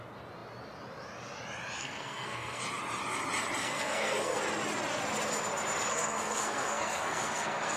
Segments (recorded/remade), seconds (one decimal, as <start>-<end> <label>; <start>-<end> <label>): 0.0-1.8 recorded; 1.8-2.6 remade; 2.6-3.6 recorded; 3.6-4.4 remade; 4.4-5.9 recorded; 5.9-7.8 remade